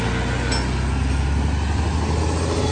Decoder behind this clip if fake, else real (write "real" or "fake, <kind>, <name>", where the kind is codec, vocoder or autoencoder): real